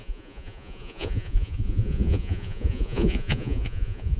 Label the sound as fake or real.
fake